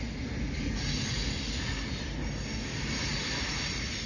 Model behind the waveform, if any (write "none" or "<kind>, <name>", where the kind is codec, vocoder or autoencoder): none